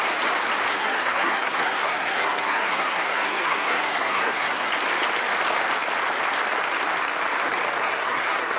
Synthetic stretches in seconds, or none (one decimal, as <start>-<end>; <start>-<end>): 0.7-4.7; 7.8-8.6